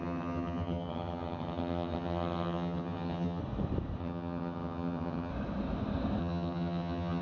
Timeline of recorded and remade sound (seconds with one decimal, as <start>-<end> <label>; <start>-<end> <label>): 0.0-3.4 remade; 3.4-4.0 recorded; 4.0-5.3 remade; 5.3-6.2 recorded; 6.2-7.2 remade